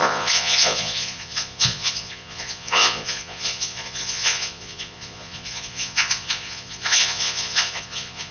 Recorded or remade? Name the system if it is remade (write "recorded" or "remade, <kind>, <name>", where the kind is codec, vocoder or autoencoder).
remade, vocoder, Vocos